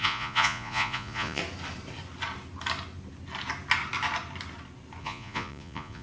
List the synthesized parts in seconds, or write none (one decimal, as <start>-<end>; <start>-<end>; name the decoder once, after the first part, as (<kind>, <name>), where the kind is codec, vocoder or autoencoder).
0.0-1.4 (vocoder, Vocos); 5.0-6.0